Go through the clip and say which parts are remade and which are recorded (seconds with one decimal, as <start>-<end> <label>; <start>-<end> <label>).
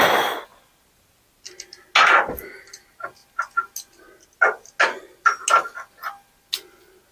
0.0-7.1 recorded